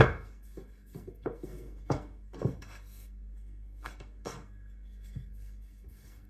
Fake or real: fake